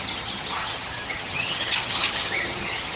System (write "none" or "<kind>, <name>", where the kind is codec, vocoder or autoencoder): vocoder, HiFi-GAN